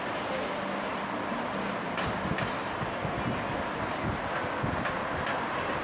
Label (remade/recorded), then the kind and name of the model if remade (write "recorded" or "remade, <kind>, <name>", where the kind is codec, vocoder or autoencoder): recorded